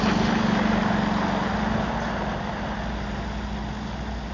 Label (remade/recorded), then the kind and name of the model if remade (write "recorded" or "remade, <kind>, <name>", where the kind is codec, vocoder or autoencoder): recorded